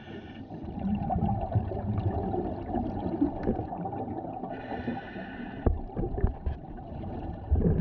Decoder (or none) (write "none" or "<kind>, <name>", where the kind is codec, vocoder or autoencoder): vocoder, BigVGAN v2